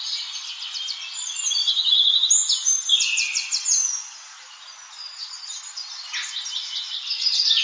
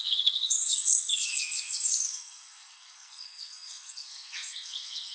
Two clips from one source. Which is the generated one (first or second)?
second